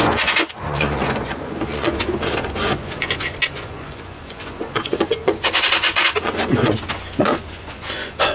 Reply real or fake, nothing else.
fake